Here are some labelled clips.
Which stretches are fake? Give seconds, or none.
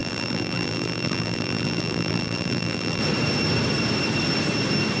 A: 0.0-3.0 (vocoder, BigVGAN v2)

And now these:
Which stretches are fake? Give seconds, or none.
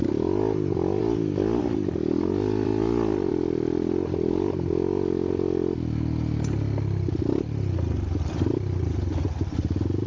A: 2.7-3.3 (vocoder, BigVGAN v2)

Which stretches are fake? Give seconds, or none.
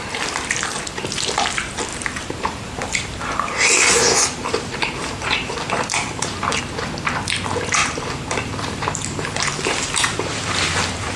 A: 1.9-6.6 (vocoder, BigVGAN v2); 7.8-11.2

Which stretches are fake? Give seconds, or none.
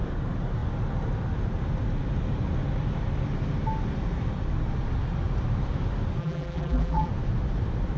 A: 6.2-7.1 (vocoder, BigVGAN v2)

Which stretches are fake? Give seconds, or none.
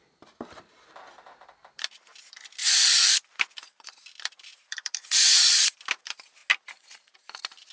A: 0.0-6.4 (vocoder, BigVGAN v2); 6.9-7.7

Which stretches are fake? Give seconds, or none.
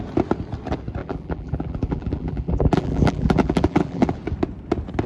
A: 1.0-4.1 (vocoder, BigVGAN v2)